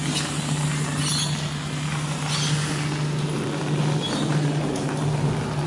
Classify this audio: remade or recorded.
recorded